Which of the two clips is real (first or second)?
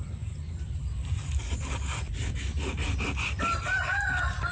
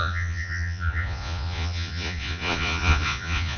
first